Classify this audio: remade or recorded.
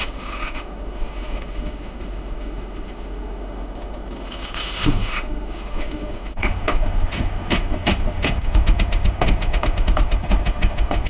remade